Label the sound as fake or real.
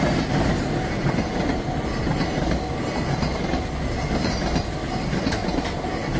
real